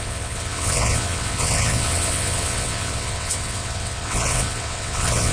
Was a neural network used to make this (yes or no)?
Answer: yes